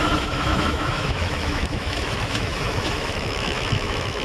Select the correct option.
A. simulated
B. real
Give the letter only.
A